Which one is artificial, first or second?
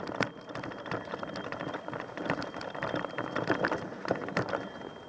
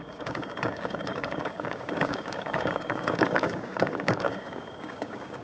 second